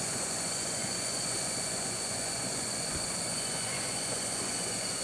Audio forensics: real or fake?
fake